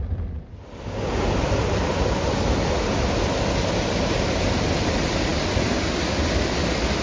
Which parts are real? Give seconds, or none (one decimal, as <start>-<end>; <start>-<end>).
0.0-7.0